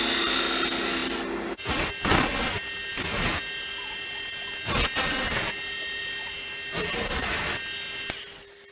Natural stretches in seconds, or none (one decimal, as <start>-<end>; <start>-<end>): 0.0-8.7